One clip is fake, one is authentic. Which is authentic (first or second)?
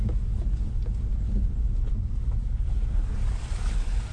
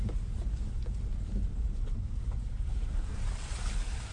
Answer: first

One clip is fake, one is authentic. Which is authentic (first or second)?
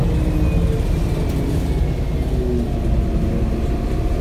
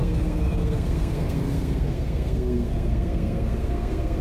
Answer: first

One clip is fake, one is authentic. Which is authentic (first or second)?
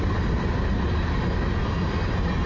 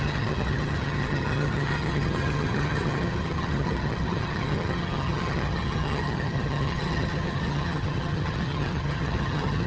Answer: first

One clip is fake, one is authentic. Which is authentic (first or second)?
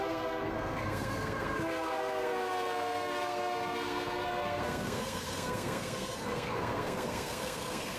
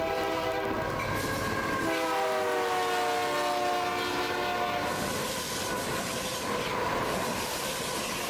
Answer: second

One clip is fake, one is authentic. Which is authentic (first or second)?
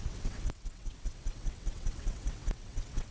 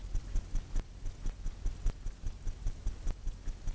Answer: second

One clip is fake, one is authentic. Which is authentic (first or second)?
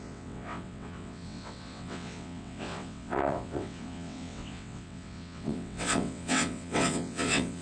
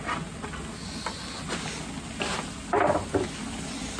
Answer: second